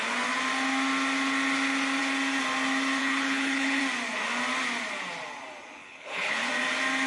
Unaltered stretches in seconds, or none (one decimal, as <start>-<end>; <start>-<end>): 0.0-3.0; 3.8-5.8; 6.5-7.1